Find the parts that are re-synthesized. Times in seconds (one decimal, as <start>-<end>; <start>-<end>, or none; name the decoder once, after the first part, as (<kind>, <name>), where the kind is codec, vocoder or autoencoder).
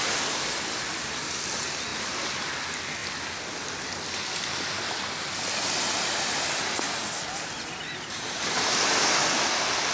none